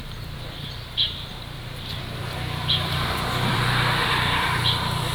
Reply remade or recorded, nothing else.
remade